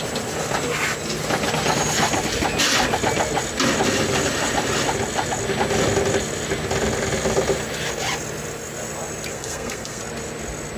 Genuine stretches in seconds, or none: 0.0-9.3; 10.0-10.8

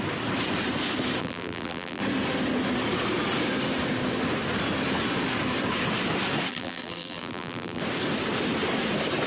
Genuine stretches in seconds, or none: 0.0-1.2; 2.0-6.5; 7.8-9.3

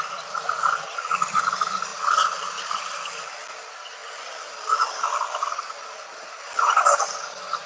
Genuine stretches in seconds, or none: 0.0-7.7

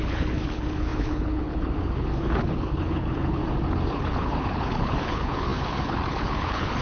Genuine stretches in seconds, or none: 3.4-3.9

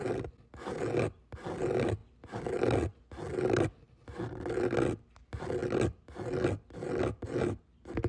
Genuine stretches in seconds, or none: 0.0-8.1